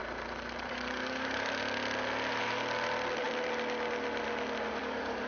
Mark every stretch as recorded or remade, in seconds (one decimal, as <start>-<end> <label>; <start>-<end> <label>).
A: 0.0-0.7 recorded; 0.7-1.6 remade; 1.6-4.8 recorded; 4.8-5.3 remade